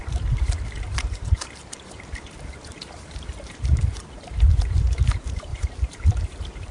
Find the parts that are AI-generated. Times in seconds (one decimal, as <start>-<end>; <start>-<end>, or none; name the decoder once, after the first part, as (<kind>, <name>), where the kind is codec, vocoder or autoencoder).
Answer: 0.0-6.7 (vocoder, BigVGAN v2)